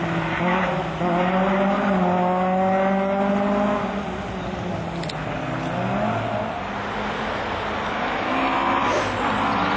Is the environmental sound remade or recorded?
recorded